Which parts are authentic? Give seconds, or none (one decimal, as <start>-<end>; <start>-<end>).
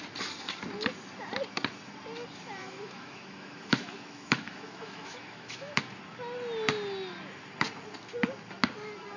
0.0-2.6; 5.7-9.2